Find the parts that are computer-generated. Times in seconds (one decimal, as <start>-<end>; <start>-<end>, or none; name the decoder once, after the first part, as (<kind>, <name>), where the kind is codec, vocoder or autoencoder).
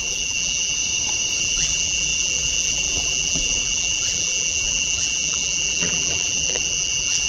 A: 0.0-0.8 (vocoder, BigVGAN v2); 1.4-7.3